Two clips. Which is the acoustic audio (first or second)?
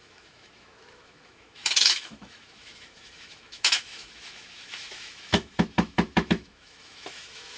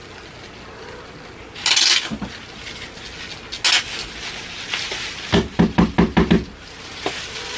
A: second